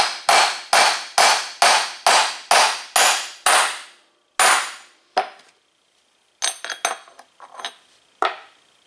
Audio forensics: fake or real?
real